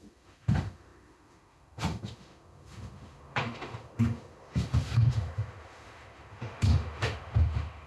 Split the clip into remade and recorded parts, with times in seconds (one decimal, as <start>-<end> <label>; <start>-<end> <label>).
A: 0.0-7.9 remade